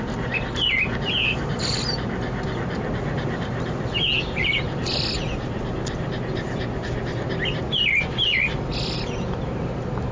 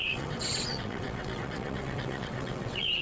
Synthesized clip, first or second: second